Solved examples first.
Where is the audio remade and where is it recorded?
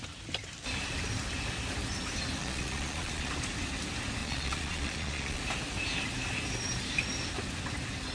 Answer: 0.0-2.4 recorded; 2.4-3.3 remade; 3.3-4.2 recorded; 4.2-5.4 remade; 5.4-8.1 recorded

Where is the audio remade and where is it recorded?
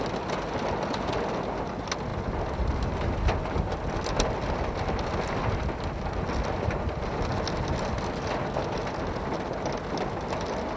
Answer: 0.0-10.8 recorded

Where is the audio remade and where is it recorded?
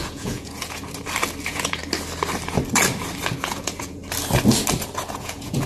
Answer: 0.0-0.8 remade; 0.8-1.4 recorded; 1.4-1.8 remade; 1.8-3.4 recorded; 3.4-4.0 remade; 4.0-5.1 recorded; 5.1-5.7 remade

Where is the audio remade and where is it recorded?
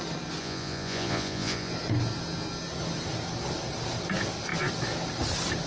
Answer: 0.0-0.4 recorded; 0.4-1.7 remade; 1.7-5.7 recorded